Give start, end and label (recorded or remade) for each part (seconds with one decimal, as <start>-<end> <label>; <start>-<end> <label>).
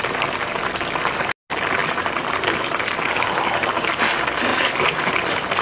0.0-1.8 recorded; 1.8-3.8 remade; 3.8-4.5 recorded; 4.5-5.0 remade; 5.0-5.6 recorded